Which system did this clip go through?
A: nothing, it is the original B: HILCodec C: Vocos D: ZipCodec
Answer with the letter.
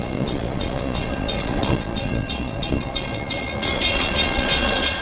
C